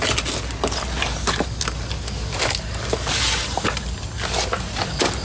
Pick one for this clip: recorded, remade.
recorded